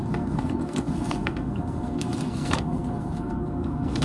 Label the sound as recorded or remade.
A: remade